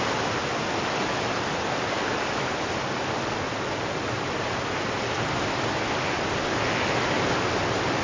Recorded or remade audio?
recorded